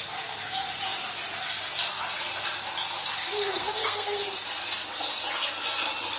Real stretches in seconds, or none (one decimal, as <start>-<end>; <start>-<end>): 0.0-3.5; 4.2-6.2